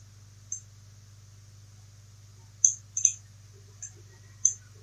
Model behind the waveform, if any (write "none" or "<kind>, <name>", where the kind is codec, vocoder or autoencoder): none